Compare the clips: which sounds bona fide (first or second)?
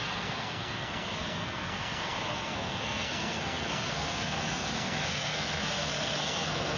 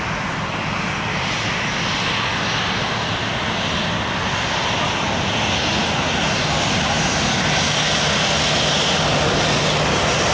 second